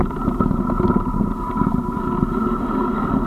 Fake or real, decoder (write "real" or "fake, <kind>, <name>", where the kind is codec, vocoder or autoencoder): real